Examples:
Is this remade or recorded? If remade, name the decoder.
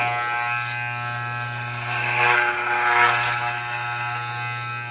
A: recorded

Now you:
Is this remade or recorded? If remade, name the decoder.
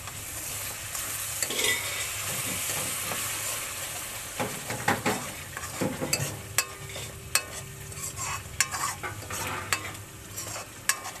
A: recorded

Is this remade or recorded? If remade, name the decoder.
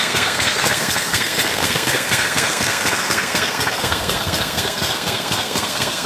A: remade, codec, SNAC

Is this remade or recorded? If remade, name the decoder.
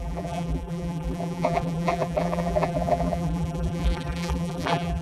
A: remade, vocoder, BigVGAN v2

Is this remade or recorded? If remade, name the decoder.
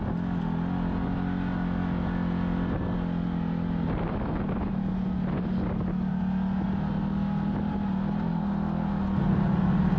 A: recorded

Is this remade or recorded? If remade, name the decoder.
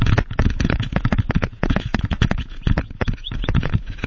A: remade, vocoder, Vocos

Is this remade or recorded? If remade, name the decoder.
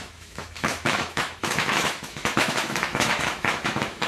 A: remade, autoencoder, DAC-VAE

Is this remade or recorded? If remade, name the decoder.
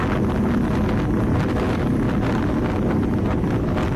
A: recorded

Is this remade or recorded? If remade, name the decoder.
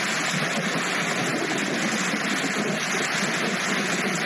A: recorded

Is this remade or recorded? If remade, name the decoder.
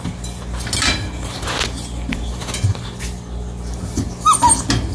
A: recorded